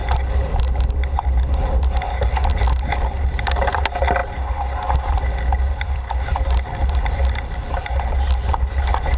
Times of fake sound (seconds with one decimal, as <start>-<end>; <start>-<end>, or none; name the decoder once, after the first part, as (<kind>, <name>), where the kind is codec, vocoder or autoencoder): none